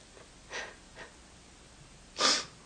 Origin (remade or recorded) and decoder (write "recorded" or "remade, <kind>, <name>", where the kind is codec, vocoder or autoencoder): recorded